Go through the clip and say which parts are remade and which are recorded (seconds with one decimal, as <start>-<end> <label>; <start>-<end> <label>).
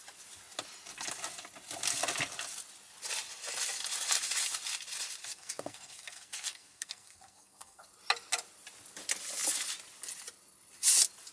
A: 0.0-5.2 recorded; 5.2-7.8 remade; 7.8-11.3 recorded